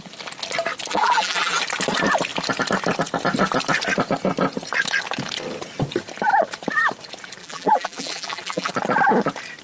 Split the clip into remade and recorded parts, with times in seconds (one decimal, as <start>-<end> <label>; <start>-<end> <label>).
0.0-0.9 recorded; 0.9-1.6 remade; 1.6-7.4 recorded; 7.4-8.7 remade; 8.7-9.6 recorded